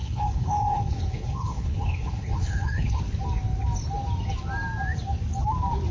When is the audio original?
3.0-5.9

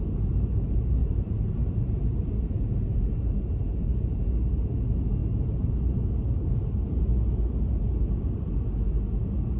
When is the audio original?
0.0-1.0; 2.0-9.6